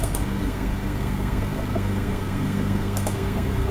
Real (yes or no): no